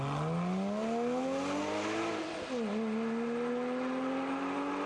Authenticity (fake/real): real